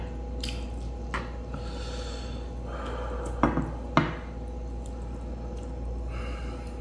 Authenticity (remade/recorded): recorded